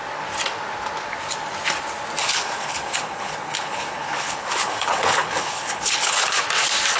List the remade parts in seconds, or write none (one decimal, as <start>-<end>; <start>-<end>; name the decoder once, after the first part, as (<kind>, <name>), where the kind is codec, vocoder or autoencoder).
2.2-6.4 (codec, HILCodec)